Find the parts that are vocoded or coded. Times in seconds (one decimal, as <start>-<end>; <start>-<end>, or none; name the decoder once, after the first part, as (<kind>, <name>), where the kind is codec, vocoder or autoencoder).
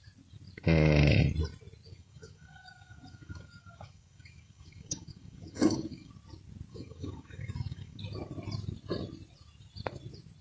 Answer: 1.9-6.1 (codec, DAC); 6.7-8.0